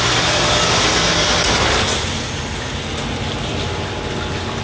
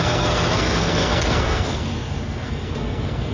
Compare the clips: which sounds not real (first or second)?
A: second